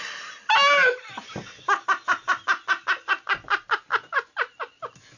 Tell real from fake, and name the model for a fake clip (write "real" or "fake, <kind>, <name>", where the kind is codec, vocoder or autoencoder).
real